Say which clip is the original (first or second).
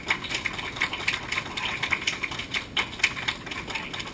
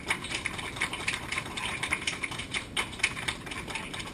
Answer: first